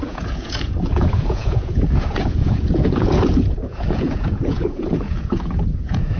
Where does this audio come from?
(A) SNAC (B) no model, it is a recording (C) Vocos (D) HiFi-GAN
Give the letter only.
C